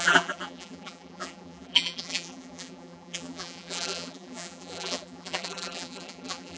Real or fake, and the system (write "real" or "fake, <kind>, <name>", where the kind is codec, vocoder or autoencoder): fake, vocoder, BigVGAN v2